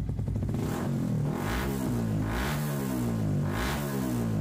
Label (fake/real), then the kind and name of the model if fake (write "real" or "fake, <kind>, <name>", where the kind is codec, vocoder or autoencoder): real